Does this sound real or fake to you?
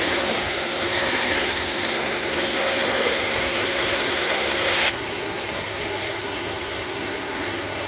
fake